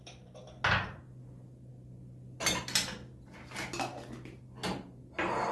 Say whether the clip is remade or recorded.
recorded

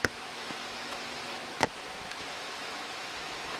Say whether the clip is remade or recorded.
remade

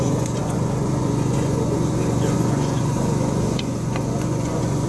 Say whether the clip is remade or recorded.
remade